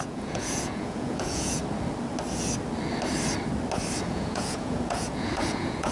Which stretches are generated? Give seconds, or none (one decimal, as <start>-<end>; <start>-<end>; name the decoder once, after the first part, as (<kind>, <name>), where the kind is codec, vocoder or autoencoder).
0.0-1.6 (vocoder, Vocos); 4.0-5.9